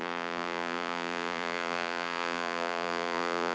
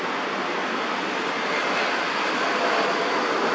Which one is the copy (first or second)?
first